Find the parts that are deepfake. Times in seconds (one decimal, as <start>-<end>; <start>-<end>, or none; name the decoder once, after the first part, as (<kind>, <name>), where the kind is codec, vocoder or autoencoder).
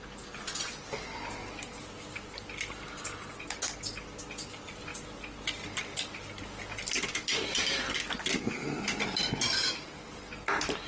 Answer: none